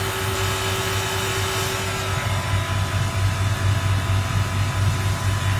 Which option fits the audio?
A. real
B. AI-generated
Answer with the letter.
A